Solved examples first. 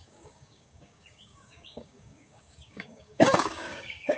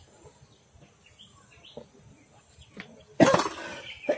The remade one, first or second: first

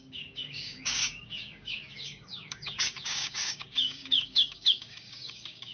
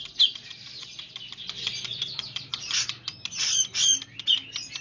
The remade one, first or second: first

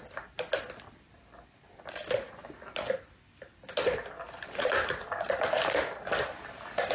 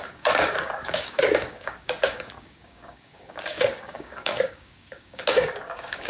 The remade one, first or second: second